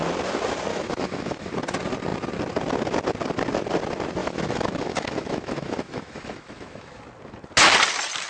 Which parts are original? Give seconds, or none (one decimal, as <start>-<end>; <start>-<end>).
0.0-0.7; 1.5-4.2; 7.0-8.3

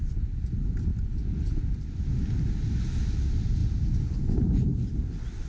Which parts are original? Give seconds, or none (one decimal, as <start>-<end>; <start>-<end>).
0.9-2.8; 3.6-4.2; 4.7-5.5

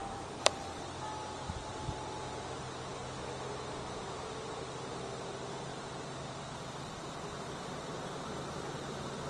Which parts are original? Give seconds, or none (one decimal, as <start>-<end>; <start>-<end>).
0.8-9.3

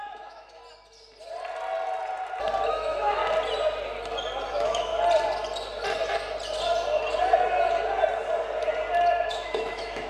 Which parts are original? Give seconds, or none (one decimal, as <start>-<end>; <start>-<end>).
0.6-2.7; 3.2-4.5; 4.9-9.3

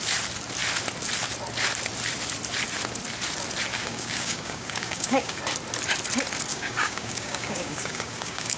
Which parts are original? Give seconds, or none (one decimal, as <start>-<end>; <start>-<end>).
0.0-3.7; 5.4-6.5

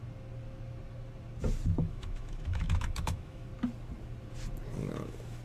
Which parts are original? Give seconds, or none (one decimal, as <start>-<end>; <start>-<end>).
0.0-1.8; 3.5-4.9

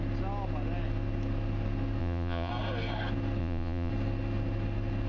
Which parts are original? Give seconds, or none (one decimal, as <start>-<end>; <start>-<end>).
0.0-2.0; 2.5-3.4; 3.9-5.1